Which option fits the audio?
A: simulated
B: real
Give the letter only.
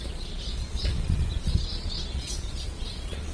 A